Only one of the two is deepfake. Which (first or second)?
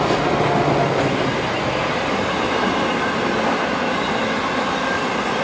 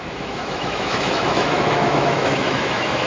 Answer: second